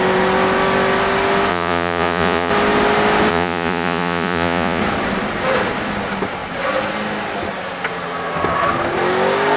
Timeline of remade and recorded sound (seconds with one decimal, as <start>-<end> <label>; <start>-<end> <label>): 0.0-1.5 recorded; 1.5-2.5 remade; 2.5-3.3 recorded; 3.3-4.8 remade; 4.8-9.6 recorded